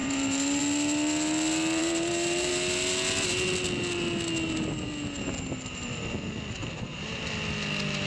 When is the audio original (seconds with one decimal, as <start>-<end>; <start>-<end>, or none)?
0.6-1.8; 2.5-6.6; 7.3-8.1